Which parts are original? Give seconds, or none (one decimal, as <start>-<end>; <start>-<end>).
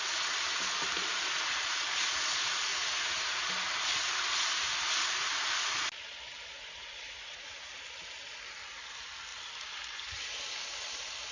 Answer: 0.0-2.7; 3.5-6.5; 7.7-11.3